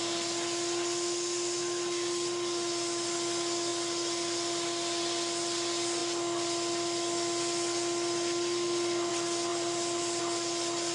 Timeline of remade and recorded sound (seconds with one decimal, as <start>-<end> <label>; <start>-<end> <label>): 0.0-9.5 recorded; 9.5-10.2 remade; 10.2-10.9 recorded